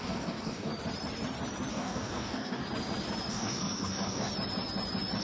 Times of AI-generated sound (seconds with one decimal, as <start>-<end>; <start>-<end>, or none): 0.0-0.7; 1.7-2.6; 3.3-4.3